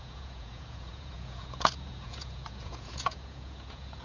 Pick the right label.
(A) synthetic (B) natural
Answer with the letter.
A